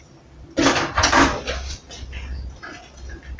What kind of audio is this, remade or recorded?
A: recorded